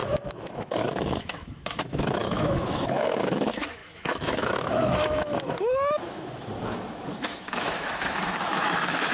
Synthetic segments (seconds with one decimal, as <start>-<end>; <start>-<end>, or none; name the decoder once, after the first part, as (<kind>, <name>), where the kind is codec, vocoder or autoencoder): 0.0-9.1 (autoencoder, DAC-VAE)